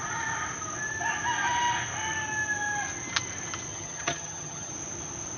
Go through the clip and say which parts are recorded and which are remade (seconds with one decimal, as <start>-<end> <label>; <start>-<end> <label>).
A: 0.0-3.7 recorded; 3.7-4.7 remade; 4.7-5.4 recorded